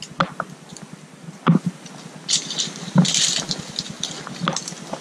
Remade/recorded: recorded